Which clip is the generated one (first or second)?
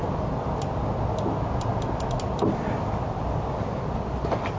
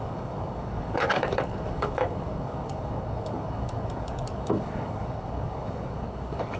second